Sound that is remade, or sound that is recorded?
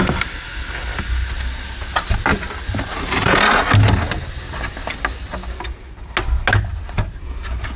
recorded